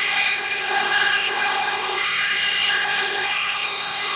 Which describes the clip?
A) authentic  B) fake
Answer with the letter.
B